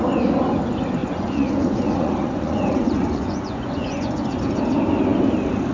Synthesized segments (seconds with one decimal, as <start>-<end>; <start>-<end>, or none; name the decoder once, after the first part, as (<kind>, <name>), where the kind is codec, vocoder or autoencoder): 1.0-4.4 (vocoder, Vocos)